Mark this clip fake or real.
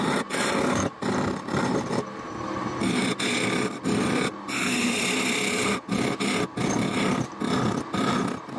real